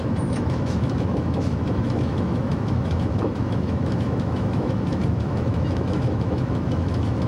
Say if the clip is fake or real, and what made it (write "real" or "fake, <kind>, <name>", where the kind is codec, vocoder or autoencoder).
fake, autoencoder, DAC-VAE